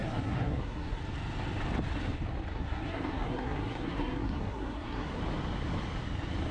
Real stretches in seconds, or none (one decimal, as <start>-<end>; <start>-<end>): 1.0-2.5; 5.2-6.5